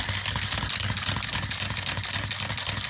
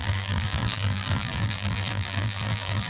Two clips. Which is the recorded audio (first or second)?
first